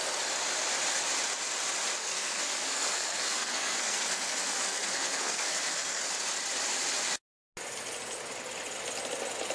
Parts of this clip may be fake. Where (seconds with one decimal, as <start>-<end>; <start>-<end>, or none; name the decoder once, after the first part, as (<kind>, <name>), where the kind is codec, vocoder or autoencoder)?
2.0-6.0 (codec, SNAC)